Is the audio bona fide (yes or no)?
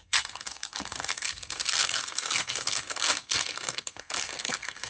no